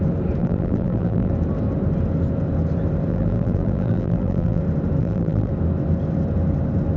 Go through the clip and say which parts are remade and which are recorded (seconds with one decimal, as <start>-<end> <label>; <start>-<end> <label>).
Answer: 0.0-0.4 recorded; 0.4-1.3 remade; 1.3-3.1 recorded; 3.1-4.6 remade; 4.6-5.0 recorded; 5.0-5.5 remade; 5.5-7.0 recorded